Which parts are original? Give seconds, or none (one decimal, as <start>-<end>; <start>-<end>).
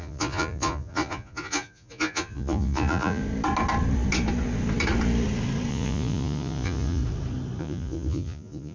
3.2-5.7; 7.0-7.6